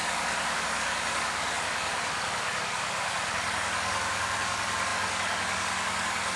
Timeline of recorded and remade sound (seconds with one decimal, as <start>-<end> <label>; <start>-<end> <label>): 0.0-6.4 remade